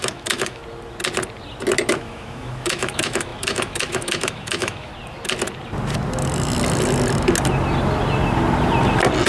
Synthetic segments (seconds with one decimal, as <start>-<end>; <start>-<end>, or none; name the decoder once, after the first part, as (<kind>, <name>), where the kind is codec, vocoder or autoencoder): 0.0-0.6 (autoencoder, DAC-VAE); 1.9-4.9